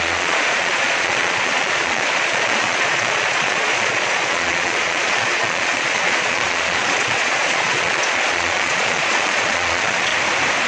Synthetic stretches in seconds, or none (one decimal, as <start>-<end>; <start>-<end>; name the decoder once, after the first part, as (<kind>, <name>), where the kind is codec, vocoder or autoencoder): 0.0-10.1 (vocoder, Vocos)